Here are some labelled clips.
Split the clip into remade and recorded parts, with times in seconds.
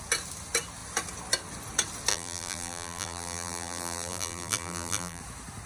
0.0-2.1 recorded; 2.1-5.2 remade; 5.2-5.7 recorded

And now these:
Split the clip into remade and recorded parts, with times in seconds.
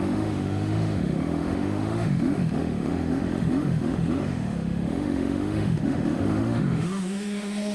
0.0-7.7 remade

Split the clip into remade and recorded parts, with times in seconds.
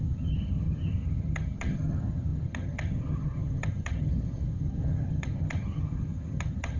0.0-6.8 remade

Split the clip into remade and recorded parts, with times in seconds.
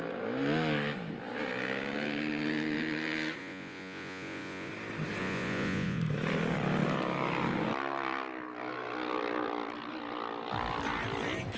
0.0-3.4 recorded; 3.4-4.7 remade; 4.7-5.2 recorded; 5.2-6.0 remade; 6.0-11.6 recorded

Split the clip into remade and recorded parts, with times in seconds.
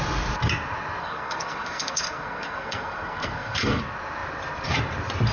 0.0-1.0 recorded; 1.0-3.8 remade; 3.8-5.3 recorded